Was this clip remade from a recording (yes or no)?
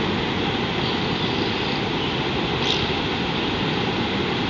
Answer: no